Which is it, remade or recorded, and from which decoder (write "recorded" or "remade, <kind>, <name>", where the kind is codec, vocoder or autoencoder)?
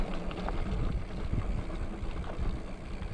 recorded